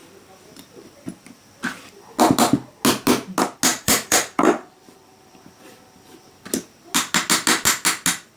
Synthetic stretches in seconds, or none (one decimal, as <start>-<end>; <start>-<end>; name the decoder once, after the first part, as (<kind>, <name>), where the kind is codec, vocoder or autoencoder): 3.7-5.0 (vocoder, BigVGAN v2)